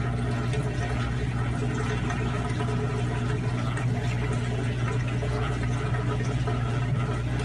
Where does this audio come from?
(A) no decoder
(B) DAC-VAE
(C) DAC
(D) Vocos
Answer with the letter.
A